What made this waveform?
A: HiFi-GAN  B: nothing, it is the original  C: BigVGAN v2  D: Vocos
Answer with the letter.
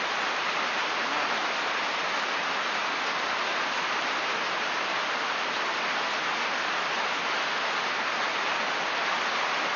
B